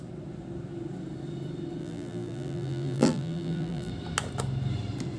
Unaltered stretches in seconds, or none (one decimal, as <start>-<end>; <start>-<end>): 0.0-1.8; 3.9-5.2